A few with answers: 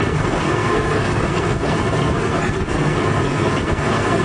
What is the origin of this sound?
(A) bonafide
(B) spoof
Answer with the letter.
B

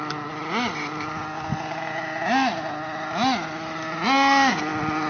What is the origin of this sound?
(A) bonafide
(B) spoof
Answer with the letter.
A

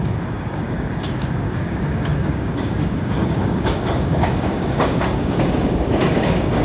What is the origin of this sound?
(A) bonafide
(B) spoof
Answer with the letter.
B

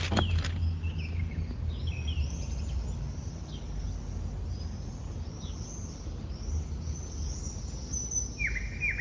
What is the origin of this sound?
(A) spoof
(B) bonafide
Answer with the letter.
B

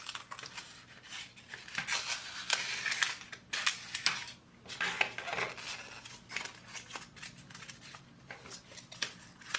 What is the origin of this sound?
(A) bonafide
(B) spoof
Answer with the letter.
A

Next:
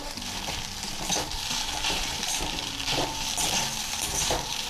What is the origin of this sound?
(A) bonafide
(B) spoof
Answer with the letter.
B